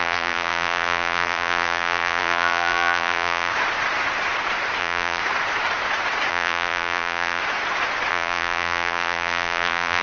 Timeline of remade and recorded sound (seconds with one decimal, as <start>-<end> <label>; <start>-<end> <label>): 0.0-3.5 remade; 3.5-4.8 recorded; 4.8-5.2 remade; 5.2-6.3 recorded; 6.3-7.4 remade; 7.4-8.1 recorded; 8.1-10.0 remade

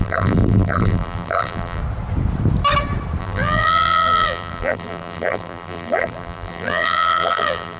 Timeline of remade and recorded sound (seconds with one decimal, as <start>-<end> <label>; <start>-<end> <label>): 0.0-1.8 remade; 1.8-3.2 recorded; 3.2-7.8 remade